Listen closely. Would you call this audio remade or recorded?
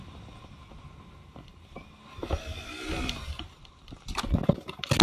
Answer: recorded